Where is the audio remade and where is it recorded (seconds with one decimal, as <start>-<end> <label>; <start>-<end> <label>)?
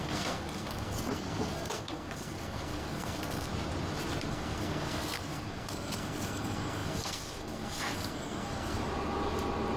0.0-3.5 remade; 3.5-4.3 recorded; 4.3-8.8 remade; 8.8-9.8 recorded